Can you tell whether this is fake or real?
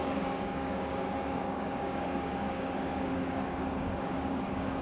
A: fake